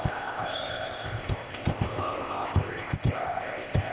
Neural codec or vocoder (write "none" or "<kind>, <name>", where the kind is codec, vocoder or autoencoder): codec, ZipCodec